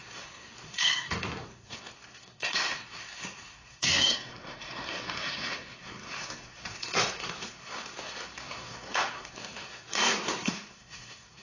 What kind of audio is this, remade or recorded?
remade